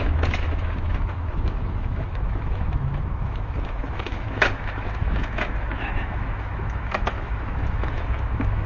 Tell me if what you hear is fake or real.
fake